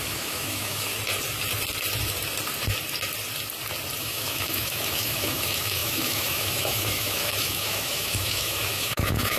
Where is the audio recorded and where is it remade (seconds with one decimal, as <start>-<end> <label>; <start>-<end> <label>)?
0.0-0.9 remade; 0.9-4.0 recorded; 4.0-9.4 remade